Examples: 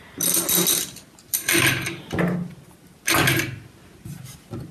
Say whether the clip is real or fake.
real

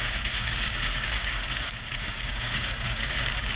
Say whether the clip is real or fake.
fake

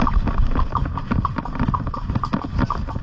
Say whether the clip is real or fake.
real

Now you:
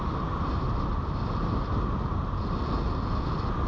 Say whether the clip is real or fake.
real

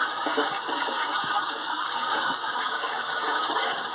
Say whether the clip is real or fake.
fake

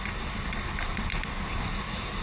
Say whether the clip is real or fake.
real